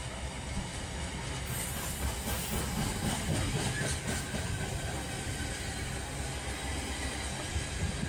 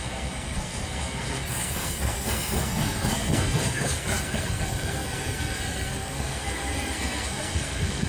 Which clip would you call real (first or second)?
first